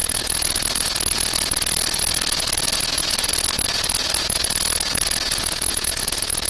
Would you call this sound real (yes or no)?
no